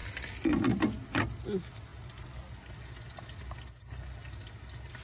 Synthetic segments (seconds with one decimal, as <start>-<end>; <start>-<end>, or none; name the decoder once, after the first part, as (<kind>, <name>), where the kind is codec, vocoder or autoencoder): none